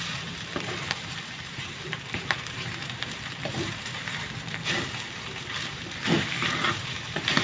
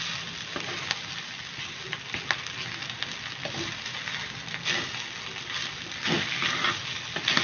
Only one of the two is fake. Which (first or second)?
first